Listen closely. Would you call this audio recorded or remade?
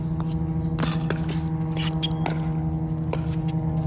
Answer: recorded